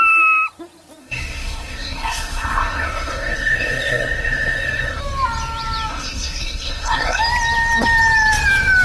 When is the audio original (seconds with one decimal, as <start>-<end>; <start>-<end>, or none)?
0.0-1.0; 5.0-5.9; 7.2-8.8